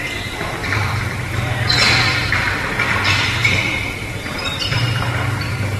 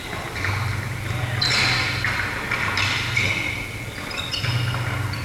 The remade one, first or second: first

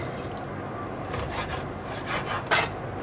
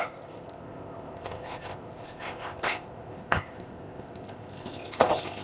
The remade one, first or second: second